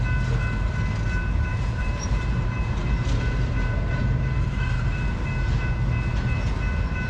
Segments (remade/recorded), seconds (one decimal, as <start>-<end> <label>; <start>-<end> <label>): 0.0-1.5 recorded; 1.5-5.7 remade; 5.7-7.1 recorded